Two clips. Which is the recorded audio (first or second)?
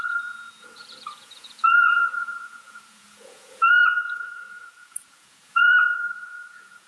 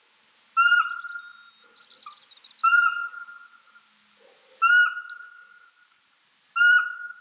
second